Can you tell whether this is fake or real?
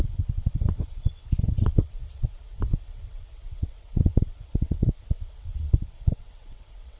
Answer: fake